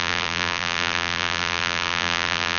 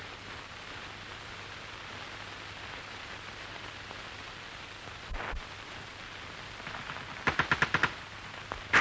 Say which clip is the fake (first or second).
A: first